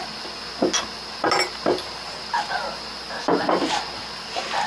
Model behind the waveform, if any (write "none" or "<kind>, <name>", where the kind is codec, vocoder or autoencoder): none